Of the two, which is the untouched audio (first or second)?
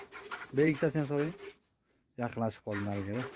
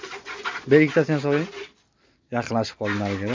second